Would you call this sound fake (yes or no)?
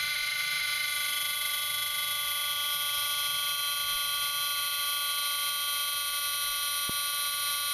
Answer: no